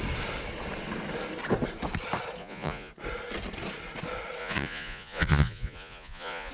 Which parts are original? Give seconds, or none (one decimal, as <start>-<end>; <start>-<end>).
0.0-2.4; 2.9-4.4